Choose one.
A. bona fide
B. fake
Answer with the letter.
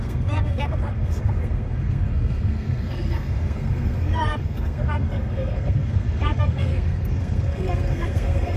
B